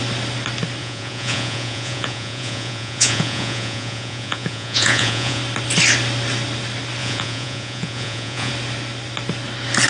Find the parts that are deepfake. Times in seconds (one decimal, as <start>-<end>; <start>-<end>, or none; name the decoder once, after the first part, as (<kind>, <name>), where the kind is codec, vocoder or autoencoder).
0.8-5.4 (vocoder, Vocos); 7.0-8.5